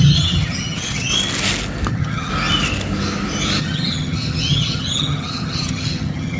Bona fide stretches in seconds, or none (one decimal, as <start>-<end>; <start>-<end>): 1.1-1.9; 2.3-3.6